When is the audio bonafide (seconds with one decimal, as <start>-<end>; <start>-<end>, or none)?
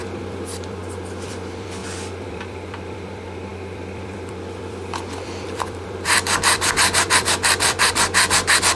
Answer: 0.8-1.3